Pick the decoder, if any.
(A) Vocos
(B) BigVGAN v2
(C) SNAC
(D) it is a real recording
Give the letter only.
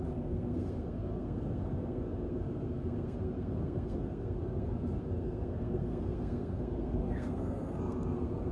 C